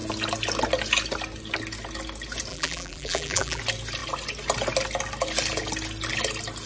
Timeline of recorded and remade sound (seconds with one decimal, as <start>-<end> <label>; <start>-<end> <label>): 0.0-2.5 recorded; 2.5-3.6 remade; 3.6-6.7 recorded